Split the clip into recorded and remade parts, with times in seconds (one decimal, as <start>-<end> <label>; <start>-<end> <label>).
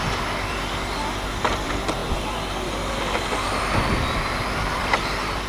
0.0-4.8 recorded; 4.8-5.5 remade